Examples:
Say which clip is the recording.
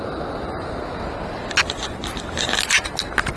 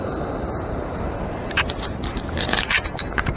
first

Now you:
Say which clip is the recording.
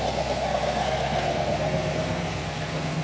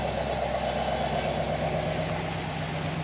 second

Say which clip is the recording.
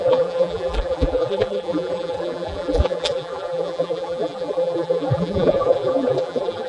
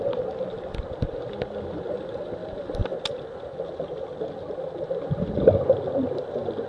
second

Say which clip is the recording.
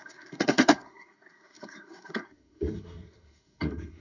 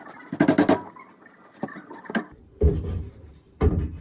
second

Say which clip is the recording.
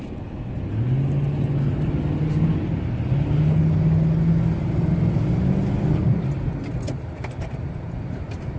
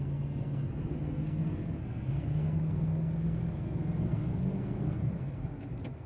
first